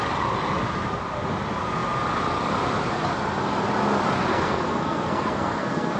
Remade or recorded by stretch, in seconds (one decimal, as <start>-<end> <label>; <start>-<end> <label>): 0.0-4.3 recorded; 4.3-6.0 remade

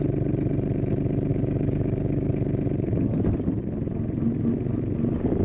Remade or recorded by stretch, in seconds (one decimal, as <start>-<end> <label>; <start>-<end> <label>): 0.0-1.3 recorded; 1.3-2.3 remade; 2.3-5.4 recorded

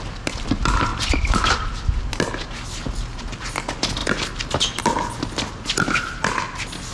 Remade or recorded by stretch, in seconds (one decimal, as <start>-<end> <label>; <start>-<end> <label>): 0.0-0.9 recorded; 0.9-1.7 remade; 1.7-6.9 recorded

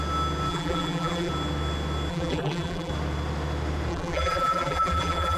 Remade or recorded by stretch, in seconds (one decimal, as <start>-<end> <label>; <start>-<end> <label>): 0.0-0.5 recorded; 0.5-1.3 remade; 1.3-2.1 recorded; 2.1-2.9 remade; 2.9-3.9 recorded; 3.9-5.4 remade

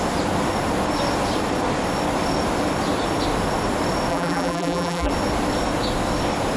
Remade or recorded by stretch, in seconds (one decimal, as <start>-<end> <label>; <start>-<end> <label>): 0.0-4.1 recorded; 4.1-5.1 remade; 5.1-6.6 recorded